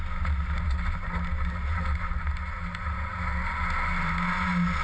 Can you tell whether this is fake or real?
real